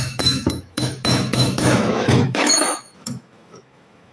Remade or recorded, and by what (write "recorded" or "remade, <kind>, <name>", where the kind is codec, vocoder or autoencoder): remade, autoencoder, DAC-VAE